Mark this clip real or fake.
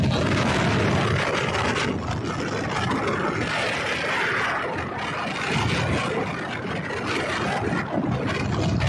real